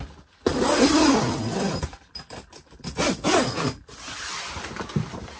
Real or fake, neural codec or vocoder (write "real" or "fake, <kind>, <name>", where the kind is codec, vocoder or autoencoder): real